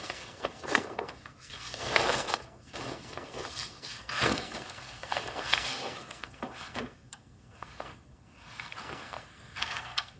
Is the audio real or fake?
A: fake